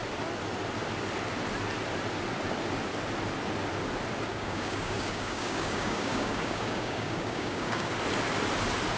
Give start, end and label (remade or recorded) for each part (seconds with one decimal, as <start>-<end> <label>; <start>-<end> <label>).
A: 0.0-4.3 recorded; 4.3-7.9 remade; 7.9-9.0 recorded